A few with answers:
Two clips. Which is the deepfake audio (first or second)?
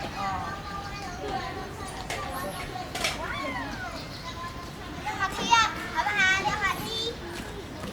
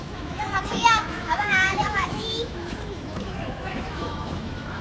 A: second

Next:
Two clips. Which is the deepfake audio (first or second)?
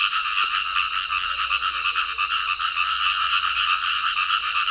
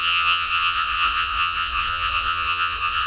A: second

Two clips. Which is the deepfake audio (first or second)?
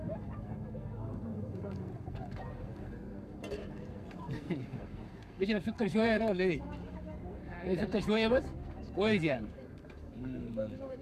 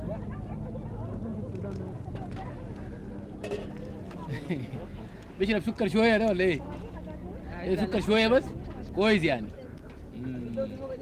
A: first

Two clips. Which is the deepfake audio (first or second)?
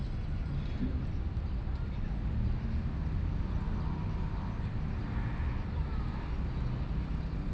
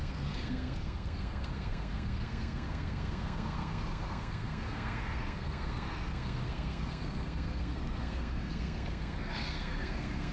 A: second